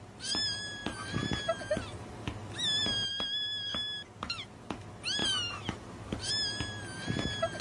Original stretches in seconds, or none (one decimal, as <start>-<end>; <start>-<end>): 0.0-5.2; 6.3-7.6